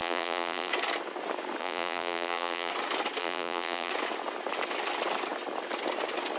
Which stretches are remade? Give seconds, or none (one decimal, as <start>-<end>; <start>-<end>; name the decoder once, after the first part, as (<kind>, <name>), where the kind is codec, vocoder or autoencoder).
0.0-0.7 (vocoder, BigVGAN v2); 1.6-2.7; 3.2-3.9